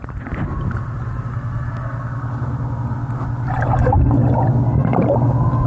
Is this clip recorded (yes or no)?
yes